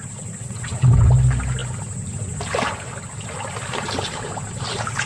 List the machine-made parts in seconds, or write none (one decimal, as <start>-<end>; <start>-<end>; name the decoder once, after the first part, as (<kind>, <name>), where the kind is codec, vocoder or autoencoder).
0.4-1.1 (vocoder, WaveNeXt)